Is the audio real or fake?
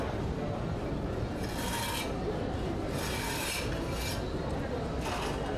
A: real